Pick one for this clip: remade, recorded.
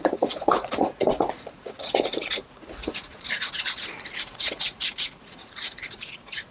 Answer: remade